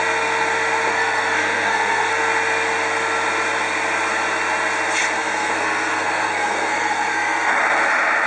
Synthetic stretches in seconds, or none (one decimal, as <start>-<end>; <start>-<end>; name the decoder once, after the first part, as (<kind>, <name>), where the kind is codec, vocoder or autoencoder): 0.9-2.1 (codec, SNAC); 5.2-7.6